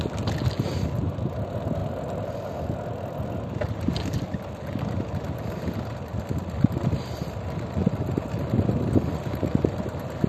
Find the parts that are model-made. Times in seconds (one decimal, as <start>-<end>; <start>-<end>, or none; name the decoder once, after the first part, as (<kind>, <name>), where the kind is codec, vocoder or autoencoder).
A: none